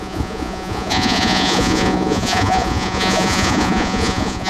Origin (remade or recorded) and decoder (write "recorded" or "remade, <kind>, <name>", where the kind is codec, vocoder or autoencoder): remade, vocoder, Vocos